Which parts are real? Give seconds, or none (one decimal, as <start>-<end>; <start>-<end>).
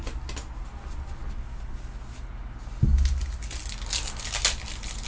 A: 0.0-5.1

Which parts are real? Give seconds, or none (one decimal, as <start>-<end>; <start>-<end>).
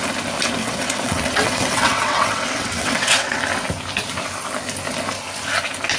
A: 0.0-0.6; 3.4-6.0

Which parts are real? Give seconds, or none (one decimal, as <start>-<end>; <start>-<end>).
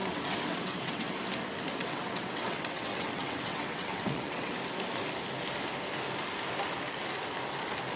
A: 1.1-1.8; 4.5-8.0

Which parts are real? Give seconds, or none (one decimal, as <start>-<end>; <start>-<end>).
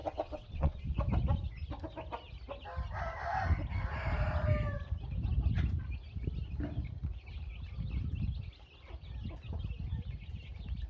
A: 0.8-10.9